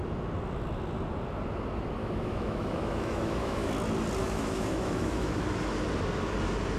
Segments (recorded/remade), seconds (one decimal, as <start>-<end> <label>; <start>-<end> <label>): 0.0-2.0 recorded; 2.0-3.7 remade; 3.7-4.2 recorded; 4.2-5.4 remade; 5.4-6.8 recorded

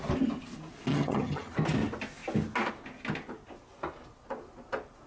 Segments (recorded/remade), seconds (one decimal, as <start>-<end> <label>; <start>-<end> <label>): 0.0-0.9 recorded; 0.9-1.5 remade; 1.5-5.1 recorded

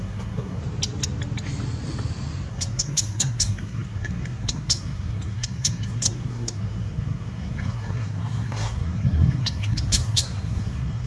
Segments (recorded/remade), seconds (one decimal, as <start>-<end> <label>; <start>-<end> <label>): 0.0-0.6 remade; 0.6-2.5 recorded; 2.5-11.1 remade

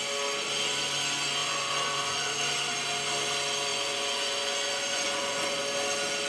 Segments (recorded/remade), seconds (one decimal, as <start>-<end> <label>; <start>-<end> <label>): 0.0-1.4 recorded; 1.4-2.3 remade; 2.3-3.7 recorded; 3.7-5.6 remade; 5.6-6.3 recorded

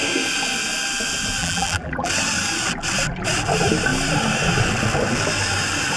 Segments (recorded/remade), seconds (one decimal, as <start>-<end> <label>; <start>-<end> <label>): 0.0-1.4 recorded; 1.4-2.1 remade; 2.1-6.0 recorded